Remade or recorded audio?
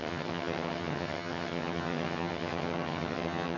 remade